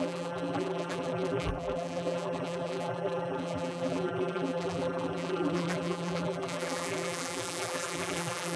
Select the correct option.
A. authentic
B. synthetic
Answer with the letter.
B